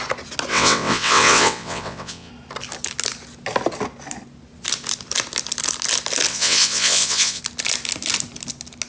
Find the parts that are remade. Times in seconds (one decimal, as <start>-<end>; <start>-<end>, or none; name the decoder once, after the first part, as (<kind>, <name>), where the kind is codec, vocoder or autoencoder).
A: 0.5-2.3 (vocoder, WaveNeXt); 6.3-7.4